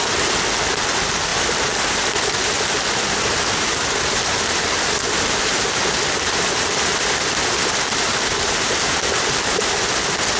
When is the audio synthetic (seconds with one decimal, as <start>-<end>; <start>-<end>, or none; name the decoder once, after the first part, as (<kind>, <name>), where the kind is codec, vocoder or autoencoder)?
none